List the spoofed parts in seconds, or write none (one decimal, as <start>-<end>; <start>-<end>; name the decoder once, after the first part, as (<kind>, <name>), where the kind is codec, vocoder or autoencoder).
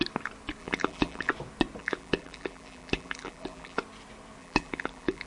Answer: 0.6-1.3 (vocoder, BigVGAN v2); 1.8-3.8; 4.4-5.3